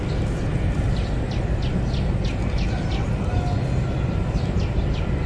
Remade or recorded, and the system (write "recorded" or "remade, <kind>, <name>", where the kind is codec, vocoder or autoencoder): recorded